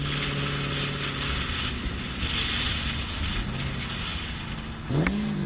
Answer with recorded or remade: recorded